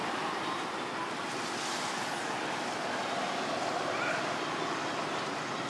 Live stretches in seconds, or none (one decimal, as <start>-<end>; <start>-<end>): 0.0-5.7